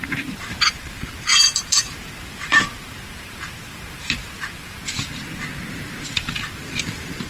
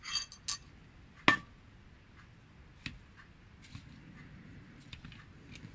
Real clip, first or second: second